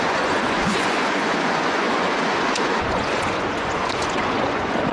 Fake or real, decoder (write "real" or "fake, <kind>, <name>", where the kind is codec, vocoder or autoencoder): fake, vocoder, Vocos